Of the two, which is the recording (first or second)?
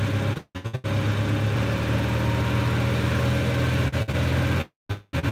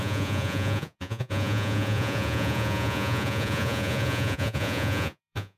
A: first